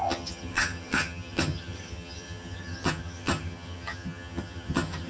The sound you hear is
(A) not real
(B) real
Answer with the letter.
A